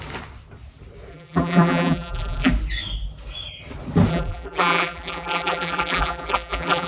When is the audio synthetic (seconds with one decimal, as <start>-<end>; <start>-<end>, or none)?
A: 1.1-2.5; 4.1-6.9